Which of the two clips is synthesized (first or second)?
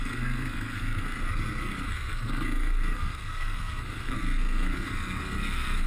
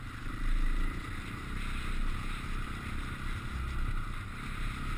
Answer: first